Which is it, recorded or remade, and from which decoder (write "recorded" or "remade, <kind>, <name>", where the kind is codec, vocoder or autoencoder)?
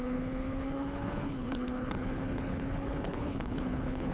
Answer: remade, codec, HILCodec